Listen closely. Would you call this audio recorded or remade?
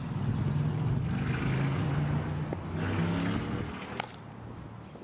recorded